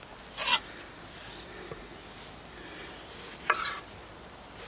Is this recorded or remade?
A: recorded